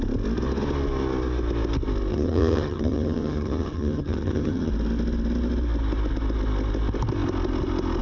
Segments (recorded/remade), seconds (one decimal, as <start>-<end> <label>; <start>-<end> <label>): 0.0-2.1 recorded; 2.1-4.7 remade; 4.7-8.0 recorded